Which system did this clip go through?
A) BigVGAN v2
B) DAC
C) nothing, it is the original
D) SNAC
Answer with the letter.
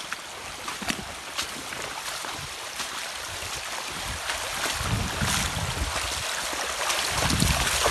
C